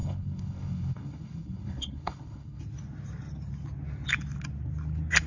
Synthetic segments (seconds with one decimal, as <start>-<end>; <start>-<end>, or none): 0.0-2.6